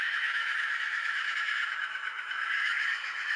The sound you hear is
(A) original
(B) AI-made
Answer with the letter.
B